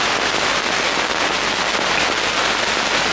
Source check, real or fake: real